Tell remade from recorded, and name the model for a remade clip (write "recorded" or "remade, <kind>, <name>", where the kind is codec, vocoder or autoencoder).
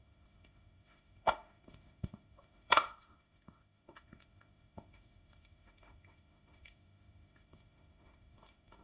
remade, autoencoder, DAC-VAE